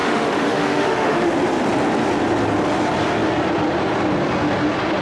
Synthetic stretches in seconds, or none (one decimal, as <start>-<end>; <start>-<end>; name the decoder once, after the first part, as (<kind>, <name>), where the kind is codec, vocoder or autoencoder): 0.0-1.3 (autoencoder, DAC-VAE)